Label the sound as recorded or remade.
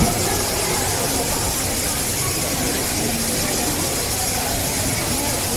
recorded